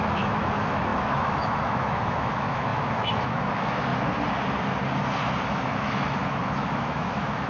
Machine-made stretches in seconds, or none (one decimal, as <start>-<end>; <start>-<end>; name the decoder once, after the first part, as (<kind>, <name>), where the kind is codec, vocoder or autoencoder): 0.0-3.9 (autoencoder, DAC-VAE); 5.5-7.5